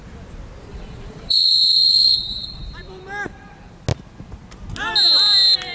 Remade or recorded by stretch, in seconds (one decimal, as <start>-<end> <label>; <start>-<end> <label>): 0.0-0.7 recorded; 0.7-2.6 remade; 2.6-5.7 recorded